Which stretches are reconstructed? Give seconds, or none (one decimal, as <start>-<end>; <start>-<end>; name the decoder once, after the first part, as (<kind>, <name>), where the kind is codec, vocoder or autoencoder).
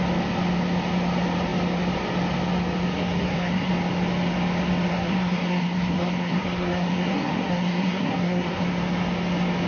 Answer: 2.9-3.7 (codec, SNAC); 4.9-8.6